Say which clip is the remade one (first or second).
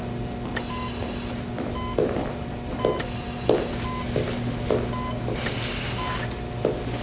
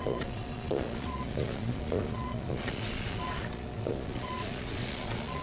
second